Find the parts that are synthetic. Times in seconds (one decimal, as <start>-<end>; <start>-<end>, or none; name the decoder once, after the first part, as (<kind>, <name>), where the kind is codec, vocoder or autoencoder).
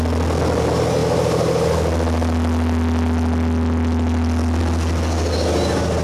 none